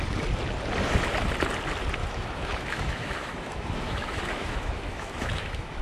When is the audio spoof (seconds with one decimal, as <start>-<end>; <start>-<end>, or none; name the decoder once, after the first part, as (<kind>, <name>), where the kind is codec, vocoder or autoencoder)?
2.0-5.8 (autoencoder, DAC-VAE)